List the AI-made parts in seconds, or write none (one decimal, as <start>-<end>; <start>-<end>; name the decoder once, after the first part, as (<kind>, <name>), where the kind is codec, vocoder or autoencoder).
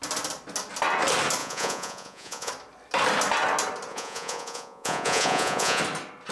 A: 1.4-2.5 (vocoder, Vocos); 3.9-5.8